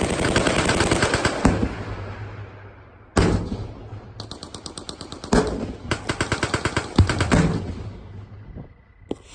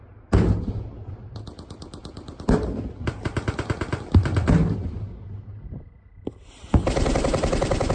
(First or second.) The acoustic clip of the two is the first